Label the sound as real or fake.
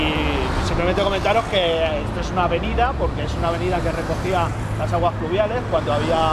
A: real